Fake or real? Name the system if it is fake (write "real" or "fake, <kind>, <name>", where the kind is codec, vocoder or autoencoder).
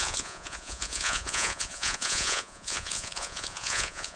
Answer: fake, vocoder, Vocos